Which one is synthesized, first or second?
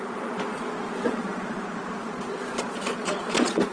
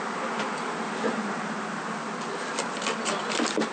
first